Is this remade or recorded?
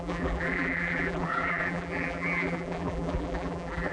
remade